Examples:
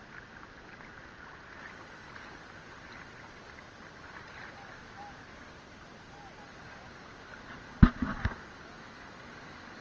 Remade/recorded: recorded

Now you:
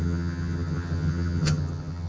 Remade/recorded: remade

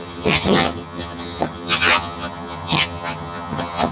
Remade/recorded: remade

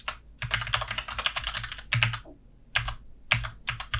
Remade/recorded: recorded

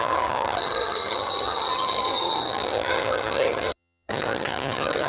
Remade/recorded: remade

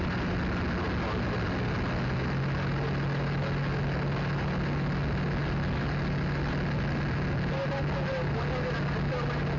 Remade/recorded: recorded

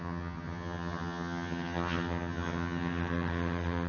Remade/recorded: remade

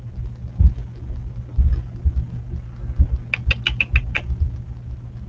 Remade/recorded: recorded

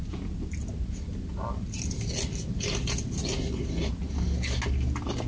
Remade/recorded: recorded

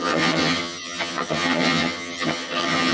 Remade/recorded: remade